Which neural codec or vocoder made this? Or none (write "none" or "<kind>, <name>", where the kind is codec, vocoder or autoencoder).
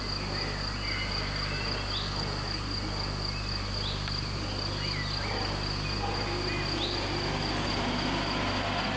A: none